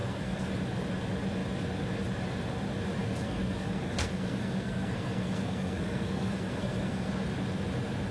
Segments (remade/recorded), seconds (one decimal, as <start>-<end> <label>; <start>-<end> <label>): 0.0-0.5 remade; 0.5-3.0 recorded; 3.0-7.1 remade; 7.1-8.1 recorded